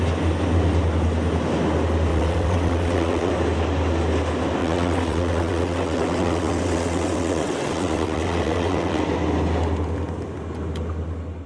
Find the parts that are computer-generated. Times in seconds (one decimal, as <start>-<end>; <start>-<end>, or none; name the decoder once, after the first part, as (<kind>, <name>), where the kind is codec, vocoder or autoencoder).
2.1-3.3 (vocoder, WaveNeXt); 4.6-9.0